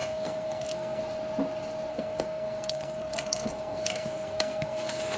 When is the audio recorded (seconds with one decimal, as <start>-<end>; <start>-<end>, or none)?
1.0-1.9